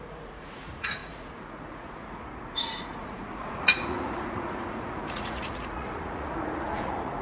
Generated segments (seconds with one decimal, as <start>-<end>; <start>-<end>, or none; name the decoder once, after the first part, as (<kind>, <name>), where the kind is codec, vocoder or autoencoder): 0.0-7.2 (vocoder, Vocos)